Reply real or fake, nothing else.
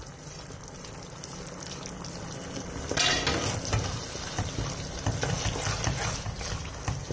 real